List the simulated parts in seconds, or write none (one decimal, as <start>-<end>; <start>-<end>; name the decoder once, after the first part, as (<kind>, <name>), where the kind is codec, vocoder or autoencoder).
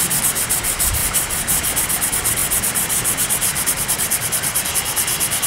none